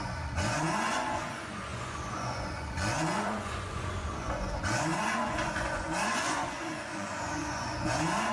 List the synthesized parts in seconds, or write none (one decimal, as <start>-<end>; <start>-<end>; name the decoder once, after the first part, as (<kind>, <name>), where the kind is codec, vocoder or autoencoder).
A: 0.0-8.3 (vocoder, Vocos)